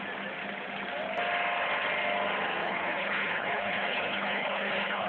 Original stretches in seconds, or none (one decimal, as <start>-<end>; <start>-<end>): 0.0-2.6